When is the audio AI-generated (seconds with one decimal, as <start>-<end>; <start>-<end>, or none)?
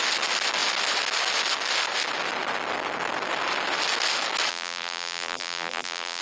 4.5-6.2